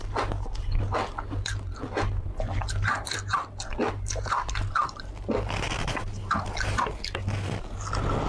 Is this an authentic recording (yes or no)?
yes